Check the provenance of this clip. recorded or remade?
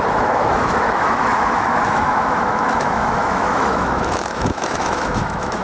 remade